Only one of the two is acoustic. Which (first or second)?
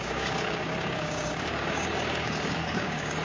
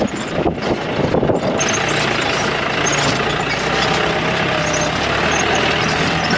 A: second